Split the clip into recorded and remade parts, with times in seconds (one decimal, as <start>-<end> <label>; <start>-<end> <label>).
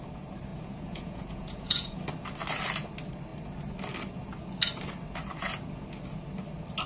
0.0-0.5 recorded; 0.5-2.0 remade; 2.0-6.9 recorded